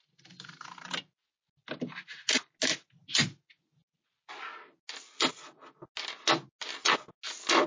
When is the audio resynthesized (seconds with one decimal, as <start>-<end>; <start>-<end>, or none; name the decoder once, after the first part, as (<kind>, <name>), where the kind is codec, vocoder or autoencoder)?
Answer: none